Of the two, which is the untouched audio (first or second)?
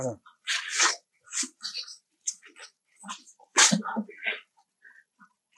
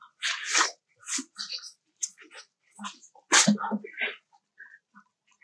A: second